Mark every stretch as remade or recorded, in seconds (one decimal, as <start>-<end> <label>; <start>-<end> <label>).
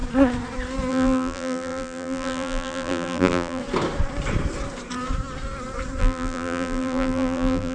0.0-0.9 recorded; 0.9-3.6 remade; 3.6-6.0 recorded; 6.0-7.7 remade